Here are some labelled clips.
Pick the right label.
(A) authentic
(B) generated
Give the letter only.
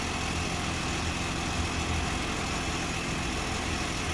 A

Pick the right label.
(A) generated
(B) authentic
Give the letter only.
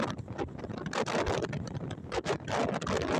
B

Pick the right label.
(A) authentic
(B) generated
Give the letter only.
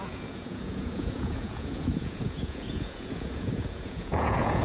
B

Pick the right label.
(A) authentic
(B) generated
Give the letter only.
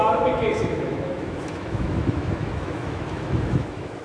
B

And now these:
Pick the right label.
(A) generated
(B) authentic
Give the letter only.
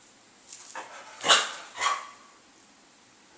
B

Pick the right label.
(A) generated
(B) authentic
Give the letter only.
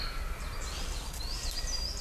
B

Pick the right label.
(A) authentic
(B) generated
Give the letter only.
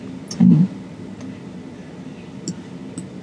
A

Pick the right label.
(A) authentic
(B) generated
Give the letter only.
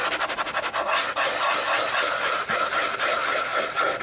A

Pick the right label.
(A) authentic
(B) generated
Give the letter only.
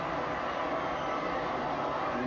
A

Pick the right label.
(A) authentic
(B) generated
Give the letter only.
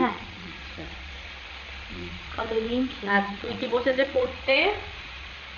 B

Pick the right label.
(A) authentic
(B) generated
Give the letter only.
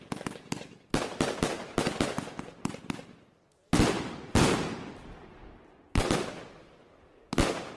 A